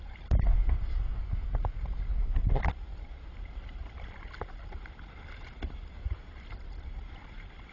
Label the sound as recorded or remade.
recorded